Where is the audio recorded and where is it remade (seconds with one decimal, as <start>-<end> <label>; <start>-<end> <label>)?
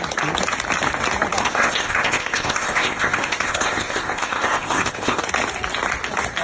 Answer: 0.0-1.4 recorded; 1.4-5.2 remade; 5.2-6.4 recorded